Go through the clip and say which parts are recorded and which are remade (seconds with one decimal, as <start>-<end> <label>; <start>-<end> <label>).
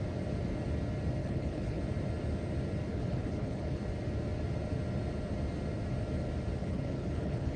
0.0-1.2 recorded; 1.2-1.8 remade; 1.8-2.9 recorded; 2.9-3.8 remade; 3.8-6.6 recorded; 6.6-7.6 remade